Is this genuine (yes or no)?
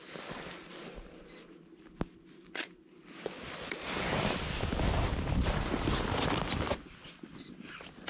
yes